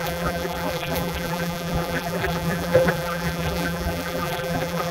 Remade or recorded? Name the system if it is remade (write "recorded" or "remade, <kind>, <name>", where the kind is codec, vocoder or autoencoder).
remade, vocoder, BigVGAN v2